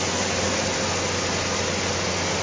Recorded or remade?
recorded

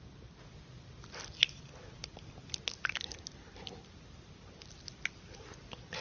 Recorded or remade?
recorded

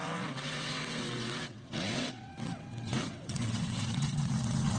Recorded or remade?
remade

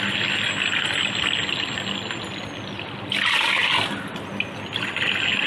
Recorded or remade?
recorded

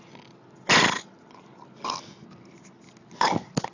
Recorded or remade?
recorded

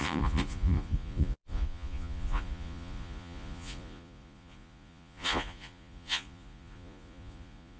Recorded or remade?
remade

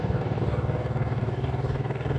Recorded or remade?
remade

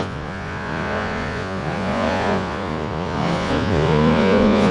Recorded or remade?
remade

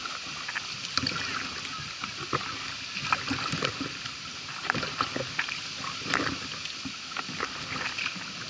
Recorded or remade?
recorded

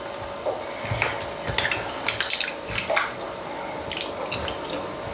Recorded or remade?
recorded